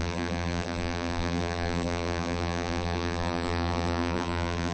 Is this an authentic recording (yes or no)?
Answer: no